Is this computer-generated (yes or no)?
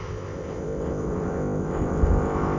yes